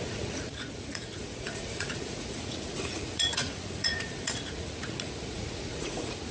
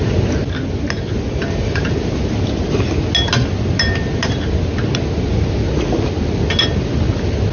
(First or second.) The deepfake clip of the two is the first